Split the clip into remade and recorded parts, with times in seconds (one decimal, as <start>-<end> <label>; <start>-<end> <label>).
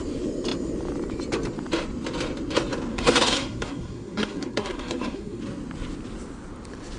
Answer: 0.0-2.9 recorded; 2.9-5.4 remade; 5.4-7.0 recorded